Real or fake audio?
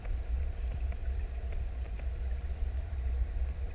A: real